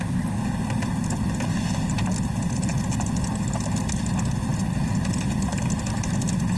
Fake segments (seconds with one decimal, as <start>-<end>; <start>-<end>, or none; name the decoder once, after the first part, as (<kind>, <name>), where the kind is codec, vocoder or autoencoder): none